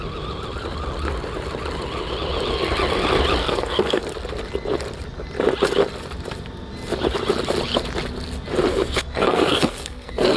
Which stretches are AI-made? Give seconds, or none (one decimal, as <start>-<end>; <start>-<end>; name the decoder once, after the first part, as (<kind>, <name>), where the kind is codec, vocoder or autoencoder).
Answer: 3.4-4.0 (codec, SNAC); 8.7-10.4